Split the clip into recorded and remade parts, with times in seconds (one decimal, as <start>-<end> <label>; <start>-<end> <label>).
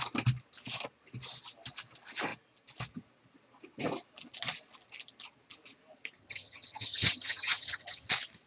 0.0-6.2 recorded; 6.2-8.1 remade; 8.1-8.5 recorded